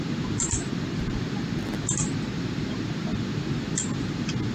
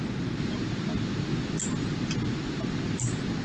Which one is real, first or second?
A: second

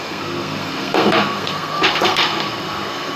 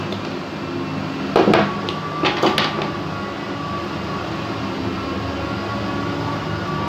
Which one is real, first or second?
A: second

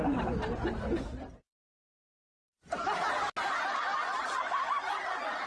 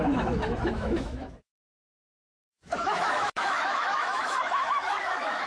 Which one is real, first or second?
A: first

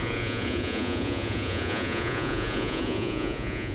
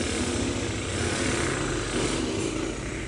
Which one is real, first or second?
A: second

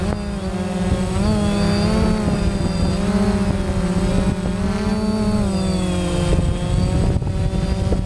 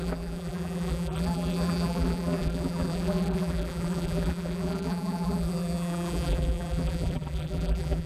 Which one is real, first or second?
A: first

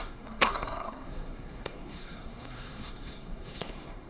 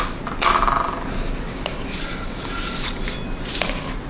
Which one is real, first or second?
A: second